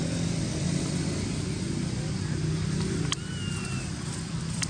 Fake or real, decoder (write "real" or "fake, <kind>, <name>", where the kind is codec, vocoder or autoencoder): real